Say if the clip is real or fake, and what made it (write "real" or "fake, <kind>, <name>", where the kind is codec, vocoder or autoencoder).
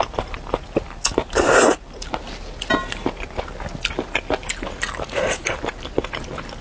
real